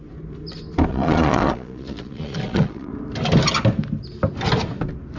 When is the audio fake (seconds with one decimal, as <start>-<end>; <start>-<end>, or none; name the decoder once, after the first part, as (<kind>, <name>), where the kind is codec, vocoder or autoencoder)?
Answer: 0.9-2.9 (vocoder, Vocos)